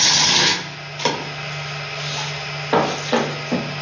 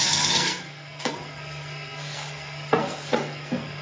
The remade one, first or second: second